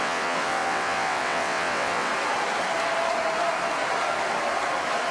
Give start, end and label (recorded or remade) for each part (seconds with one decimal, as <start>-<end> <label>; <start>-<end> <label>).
0.0-2.1 remade; 2.1-5.1 recorded